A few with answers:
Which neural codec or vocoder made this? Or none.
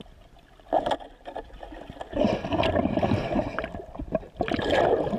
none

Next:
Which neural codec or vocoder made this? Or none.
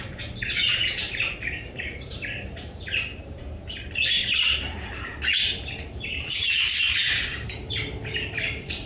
vocoder, BigVGAN v2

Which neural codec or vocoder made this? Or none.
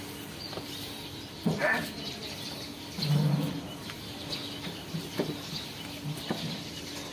vocoder, BigVGAN v2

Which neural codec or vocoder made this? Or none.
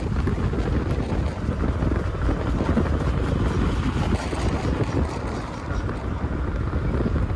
none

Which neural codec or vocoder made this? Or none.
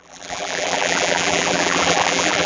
vocoder, BigVGAN v2